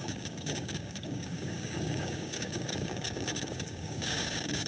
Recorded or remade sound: remade